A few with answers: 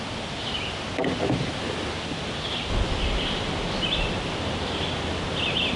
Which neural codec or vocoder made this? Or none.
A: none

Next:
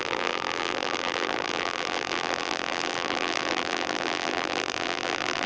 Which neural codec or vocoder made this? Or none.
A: vocoder, BigVGAN v2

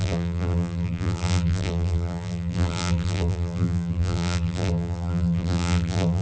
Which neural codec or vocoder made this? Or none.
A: vocoder, BigVGAN v2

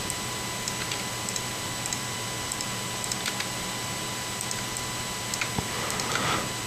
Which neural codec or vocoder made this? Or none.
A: vocoder, BigVGAN v2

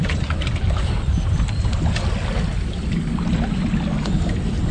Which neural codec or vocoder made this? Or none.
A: none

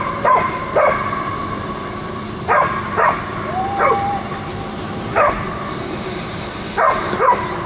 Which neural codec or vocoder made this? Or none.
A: vocoder, BigVGAN v2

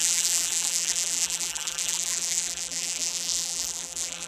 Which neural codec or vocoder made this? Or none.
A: vocoder, BigVGAN v2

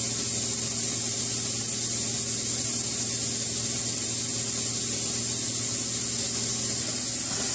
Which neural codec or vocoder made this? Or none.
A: none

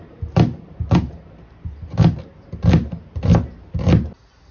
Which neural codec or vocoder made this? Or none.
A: none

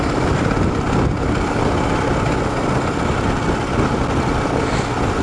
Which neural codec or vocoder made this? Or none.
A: none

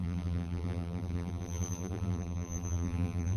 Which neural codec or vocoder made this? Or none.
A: vocoder, BigVGAN v2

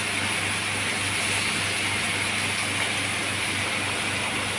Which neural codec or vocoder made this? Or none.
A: none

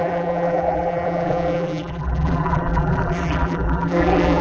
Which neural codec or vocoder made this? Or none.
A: vocoder, BigVGAN v2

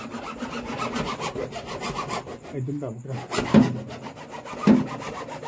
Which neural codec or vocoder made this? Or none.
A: none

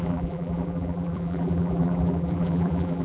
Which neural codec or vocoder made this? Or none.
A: vocoder, BigVGAN v2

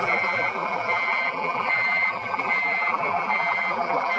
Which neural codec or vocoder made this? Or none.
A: vocoder, BigVGAN v2